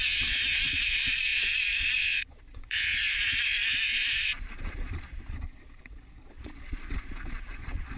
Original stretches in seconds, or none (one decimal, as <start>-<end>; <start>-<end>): none